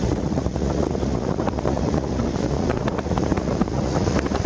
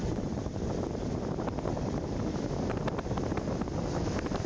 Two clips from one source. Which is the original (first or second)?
second